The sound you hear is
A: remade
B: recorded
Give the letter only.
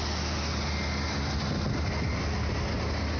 B